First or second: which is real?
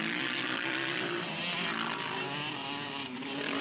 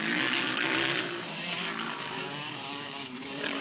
first